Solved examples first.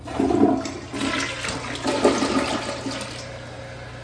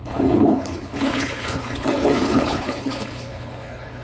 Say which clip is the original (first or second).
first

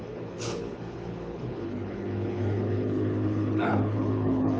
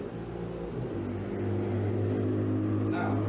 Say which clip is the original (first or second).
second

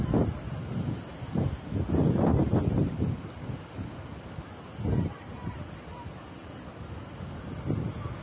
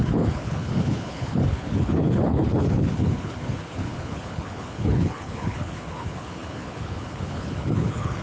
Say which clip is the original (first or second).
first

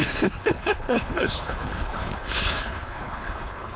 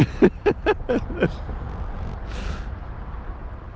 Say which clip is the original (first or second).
second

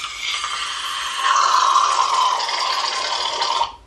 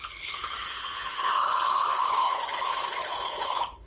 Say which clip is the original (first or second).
first